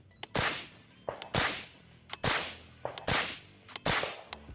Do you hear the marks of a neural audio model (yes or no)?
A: no